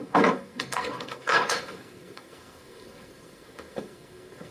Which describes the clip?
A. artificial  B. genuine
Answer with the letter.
A